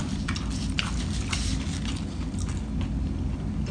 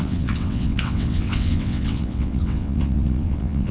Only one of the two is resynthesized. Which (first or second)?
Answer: second